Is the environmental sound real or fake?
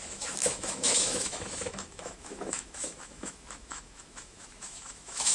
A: fake